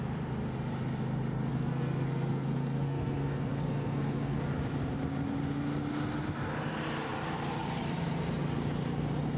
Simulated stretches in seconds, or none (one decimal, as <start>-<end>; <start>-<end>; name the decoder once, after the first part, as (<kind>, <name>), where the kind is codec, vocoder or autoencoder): 1.5-4.4 (codec, SNAC)